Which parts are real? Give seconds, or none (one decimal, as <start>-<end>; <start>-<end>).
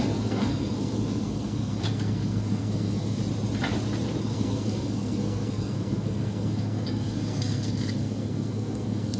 3.2-4.2